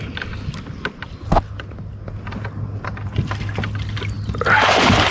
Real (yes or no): yes